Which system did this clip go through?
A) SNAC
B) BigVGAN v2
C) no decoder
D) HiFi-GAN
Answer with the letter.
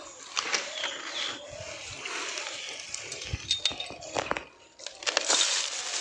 C